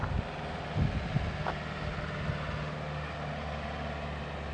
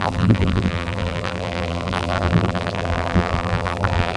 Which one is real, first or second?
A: first